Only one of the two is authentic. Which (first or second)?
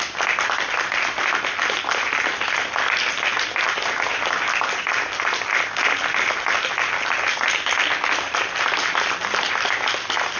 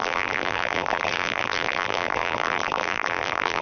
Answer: first